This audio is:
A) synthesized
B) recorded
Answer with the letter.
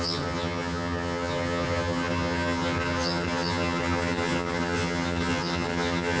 A